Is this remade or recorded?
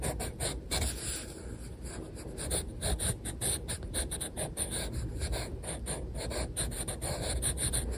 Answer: recorded